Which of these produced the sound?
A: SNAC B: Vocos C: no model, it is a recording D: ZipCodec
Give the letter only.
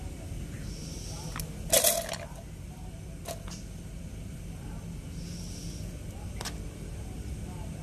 C